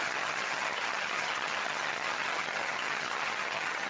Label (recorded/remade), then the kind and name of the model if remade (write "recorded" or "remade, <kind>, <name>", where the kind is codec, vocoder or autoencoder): remade, vocoder, HiFi-GAN